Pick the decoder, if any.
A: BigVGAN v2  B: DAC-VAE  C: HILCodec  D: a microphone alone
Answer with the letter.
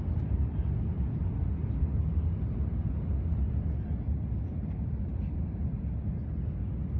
D